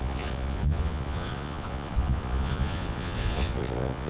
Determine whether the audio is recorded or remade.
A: remade